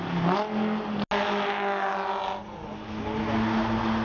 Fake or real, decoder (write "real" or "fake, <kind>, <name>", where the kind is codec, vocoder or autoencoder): real